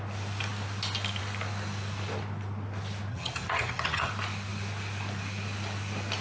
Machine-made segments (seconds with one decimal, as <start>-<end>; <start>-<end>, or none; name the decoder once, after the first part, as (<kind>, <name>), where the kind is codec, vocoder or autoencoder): 3.1-4.1 (vocoder, HiFi-GAN)